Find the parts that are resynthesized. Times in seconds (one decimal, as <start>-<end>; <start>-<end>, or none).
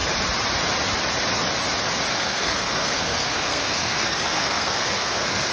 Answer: 2.1-5.5